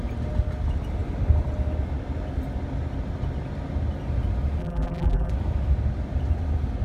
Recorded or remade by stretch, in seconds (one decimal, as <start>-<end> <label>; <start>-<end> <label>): 0.0-4.6 recorded; 4.6-5.3 remade; 5.3-6.8 recorded